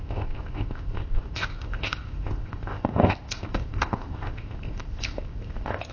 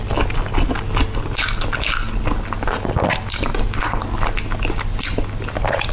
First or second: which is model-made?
first